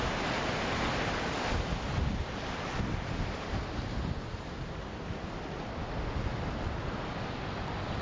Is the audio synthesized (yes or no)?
no